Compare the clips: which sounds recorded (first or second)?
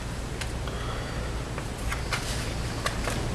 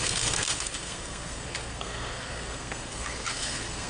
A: first